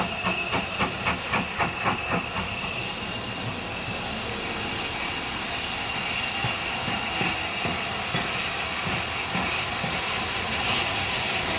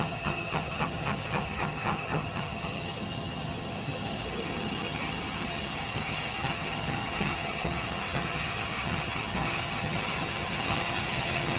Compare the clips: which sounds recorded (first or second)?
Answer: first